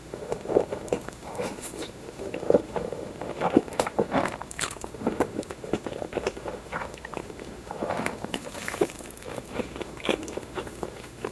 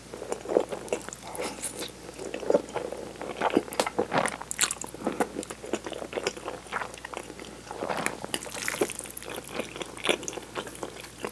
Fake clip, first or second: first